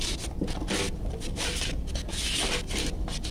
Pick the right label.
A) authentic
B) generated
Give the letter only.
A